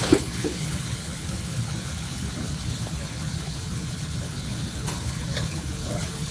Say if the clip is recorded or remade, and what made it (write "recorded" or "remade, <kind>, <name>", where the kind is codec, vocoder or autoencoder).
remade, codec, HILCodec